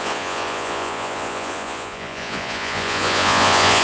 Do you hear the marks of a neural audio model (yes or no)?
yes